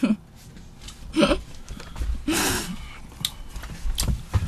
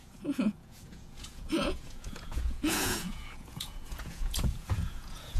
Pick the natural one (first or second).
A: first